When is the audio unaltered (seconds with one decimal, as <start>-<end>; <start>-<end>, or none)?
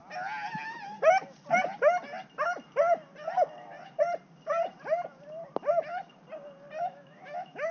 0.0-6.8